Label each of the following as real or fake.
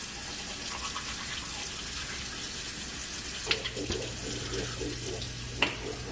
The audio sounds real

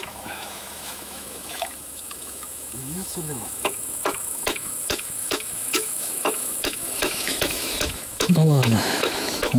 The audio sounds fake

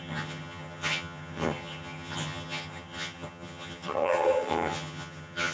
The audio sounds fake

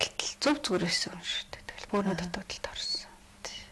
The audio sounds real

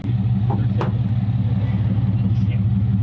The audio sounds real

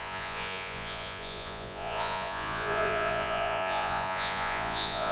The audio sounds fake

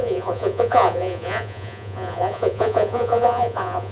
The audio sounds fake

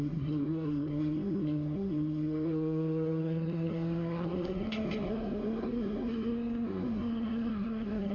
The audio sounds fake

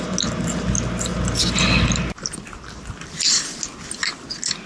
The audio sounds real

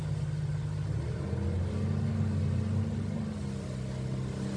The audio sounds real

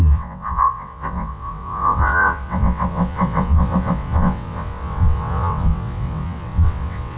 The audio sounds fake